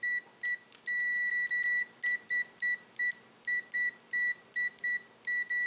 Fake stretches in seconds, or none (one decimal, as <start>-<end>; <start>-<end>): 1.8-4.7